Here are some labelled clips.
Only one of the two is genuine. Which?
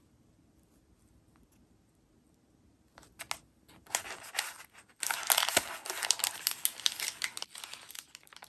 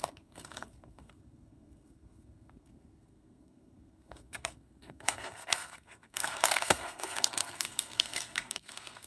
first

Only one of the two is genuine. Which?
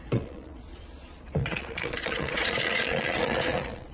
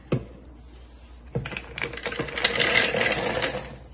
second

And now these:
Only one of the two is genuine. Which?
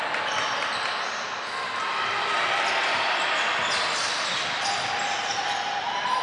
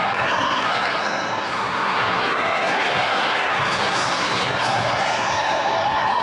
first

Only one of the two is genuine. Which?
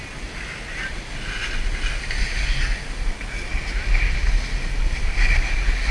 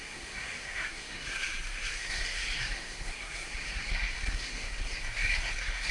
first